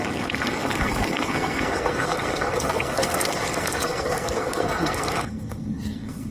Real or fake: fake